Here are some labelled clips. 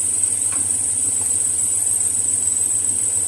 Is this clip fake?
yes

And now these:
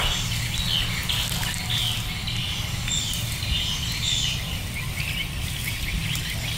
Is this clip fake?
no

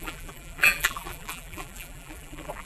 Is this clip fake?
yes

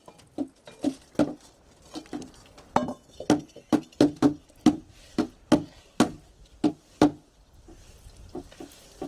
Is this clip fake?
no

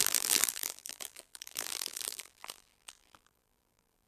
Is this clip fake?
yes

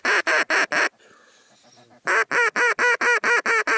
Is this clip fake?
no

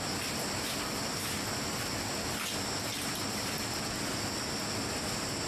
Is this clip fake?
no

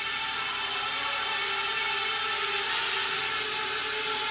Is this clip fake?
no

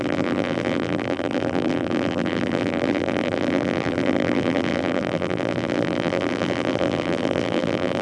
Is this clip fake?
yes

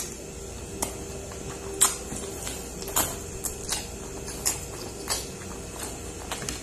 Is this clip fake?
yes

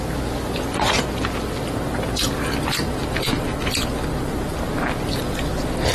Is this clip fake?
no